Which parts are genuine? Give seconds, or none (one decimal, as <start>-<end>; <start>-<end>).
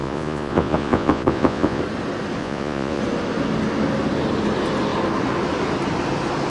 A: 1.8-2.4; 3.0-6.5